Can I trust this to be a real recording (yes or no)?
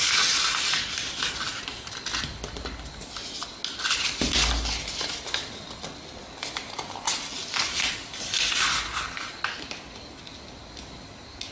yes